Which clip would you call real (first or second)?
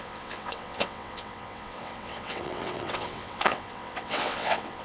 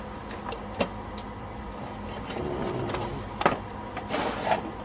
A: second